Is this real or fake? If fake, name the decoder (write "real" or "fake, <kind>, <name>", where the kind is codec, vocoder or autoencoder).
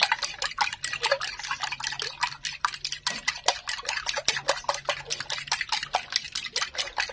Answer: real